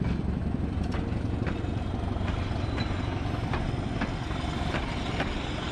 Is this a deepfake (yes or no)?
no